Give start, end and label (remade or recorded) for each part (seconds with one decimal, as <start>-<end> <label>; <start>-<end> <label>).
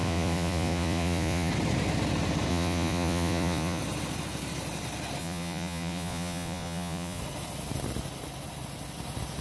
0.0-1.5 remade; 1.5-2.5 recorded; 2.5-3.8 remade; 3.8-5.2 recorded; 5.2-7.2 remade; 7.2-9.4 recorded